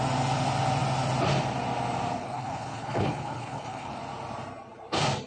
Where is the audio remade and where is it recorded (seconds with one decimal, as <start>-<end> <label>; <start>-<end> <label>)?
0.0-2.2 recorded; 2.2-4.0 remade; 4.0-5.3 recorded